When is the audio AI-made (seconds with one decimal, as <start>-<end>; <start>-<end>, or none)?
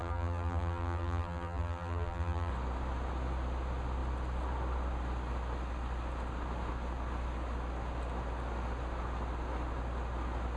0.0-2.5